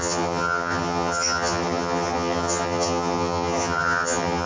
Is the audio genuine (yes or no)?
no